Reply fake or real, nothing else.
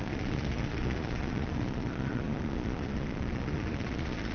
fake